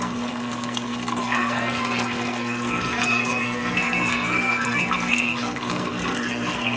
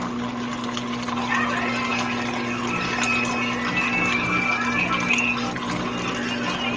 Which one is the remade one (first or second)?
first